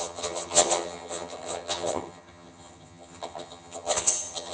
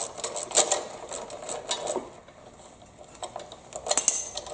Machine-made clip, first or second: first